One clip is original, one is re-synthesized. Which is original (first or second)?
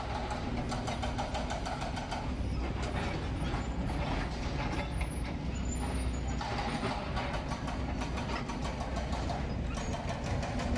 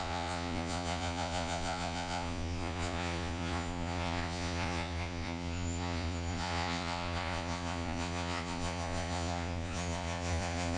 first